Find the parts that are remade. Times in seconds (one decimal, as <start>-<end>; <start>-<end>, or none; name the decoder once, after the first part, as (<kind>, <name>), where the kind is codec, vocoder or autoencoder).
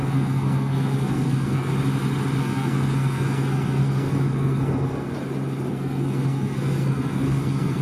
0.0-1.7 (codec, SNAC); 2.4-5.1; 5.7-7.8